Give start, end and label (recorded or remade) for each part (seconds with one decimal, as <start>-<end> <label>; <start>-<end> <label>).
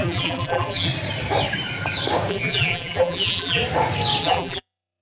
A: 0.0-0.9 remade; 0.9-2.3 recorded; 2.3-3.6 remade; 3.6-4.2 recorded; 4.2-5.0 remade